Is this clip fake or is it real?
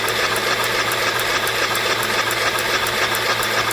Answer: real